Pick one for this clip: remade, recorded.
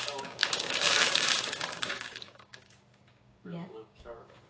remade